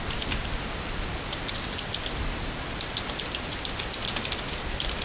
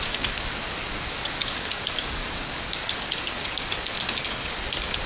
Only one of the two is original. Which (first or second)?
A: first